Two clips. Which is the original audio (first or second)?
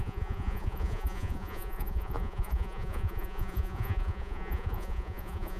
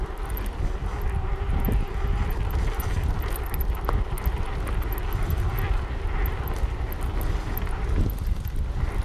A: second